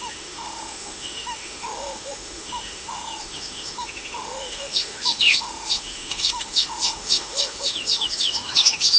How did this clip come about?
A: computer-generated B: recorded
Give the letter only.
A